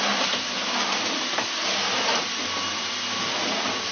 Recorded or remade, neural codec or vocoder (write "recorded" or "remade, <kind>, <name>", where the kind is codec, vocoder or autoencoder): recorded